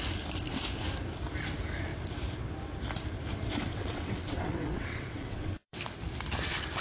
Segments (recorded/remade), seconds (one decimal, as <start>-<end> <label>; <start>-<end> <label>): 0.0-3.7 recorded; 3.7-5.8 remade; 5.8-6.8 recorded

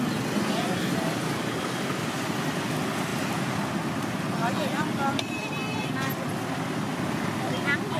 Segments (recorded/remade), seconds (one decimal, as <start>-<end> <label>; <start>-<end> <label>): 0.0-8.0 recorded